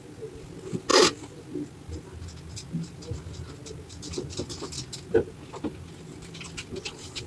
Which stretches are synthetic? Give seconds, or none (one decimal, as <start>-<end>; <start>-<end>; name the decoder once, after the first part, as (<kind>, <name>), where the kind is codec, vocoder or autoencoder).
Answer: none